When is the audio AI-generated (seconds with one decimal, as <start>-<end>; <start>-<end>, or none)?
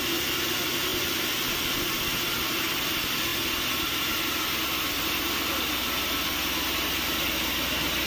0.0-0.9; 2.5-3.3